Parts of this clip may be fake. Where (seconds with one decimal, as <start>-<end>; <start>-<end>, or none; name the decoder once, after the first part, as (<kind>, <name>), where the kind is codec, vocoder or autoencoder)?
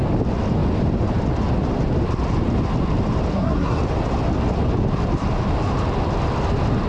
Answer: 3.3-3.8 (codec, SNAC)